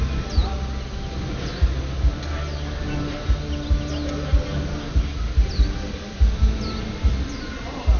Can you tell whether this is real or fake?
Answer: real